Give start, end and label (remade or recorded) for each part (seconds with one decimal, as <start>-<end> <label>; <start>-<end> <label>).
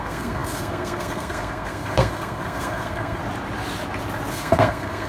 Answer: 0.0-3.2 remade; 3.2-4.3 recorded; 4.3-5.1 remade